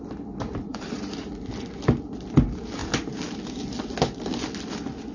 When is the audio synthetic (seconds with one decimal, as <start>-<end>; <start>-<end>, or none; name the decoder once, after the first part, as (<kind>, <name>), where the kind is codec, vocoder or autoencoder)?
0.7-1.3 (vocoder, BigVGAN v2)